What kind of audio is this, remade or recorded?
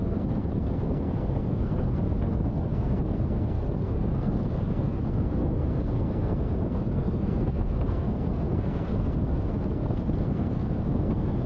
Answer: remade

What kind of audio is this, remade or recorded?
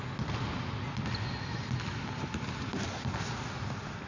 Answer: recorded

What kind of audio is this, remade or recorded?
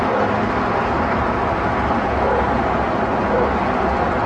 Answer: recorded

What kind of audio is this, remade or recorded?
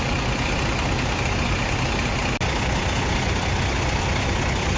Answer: recorded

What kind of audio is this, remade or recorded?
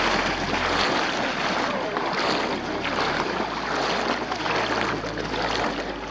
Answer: recorded